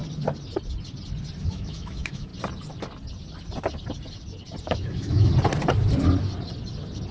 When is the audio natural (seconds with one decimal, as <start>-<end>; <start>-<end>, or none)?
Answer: 0.0-1.4; 2.3-4.6; 5.3-7.1